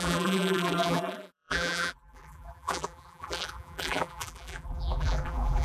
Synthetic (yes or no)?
yes